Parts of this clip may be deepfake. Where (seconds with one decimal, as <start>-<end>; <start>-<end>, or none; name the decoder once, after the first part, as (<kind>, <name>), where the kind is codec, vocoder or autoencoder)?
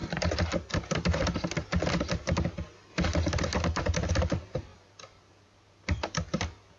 4.1-6.8 (vocoder, BigVGAN v2)